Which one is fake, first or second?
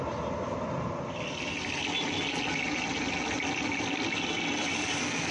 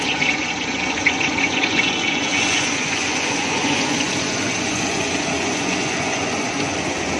second